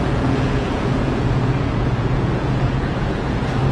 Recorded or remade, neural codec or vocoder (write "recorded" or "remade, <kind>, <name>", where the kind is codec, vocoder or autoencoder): remade, vocoder, Vocos